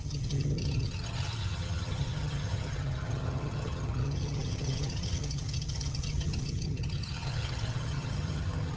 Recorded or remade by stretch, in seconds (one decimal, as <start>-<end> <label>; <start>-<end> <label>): 0.0-8.8 remade

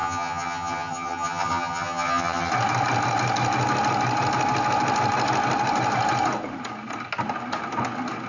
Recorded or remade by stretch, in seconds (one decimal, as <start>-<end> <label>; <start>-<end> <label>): 0.0-2.5 remade; 2.5-8.3 recorded

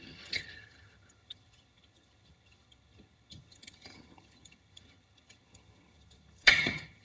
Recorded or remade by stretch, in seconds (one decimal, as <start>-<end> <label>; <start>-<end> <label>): 0.0-7.0 remade

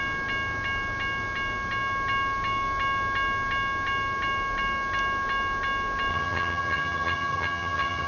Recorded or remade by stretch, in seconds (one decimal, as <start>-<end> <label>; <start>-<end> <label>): 0.0-6.1 recorded; 6.1-8.1 remade

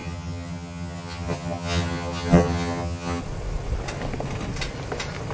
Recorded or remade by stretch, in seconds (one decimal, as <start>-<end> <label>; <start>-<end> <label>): 0.0-3.2 remade; 3.2-5.3 recorded